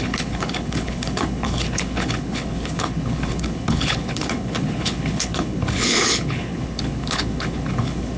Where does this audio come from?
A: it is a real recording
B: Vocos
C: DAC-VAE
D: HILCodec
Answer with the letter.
D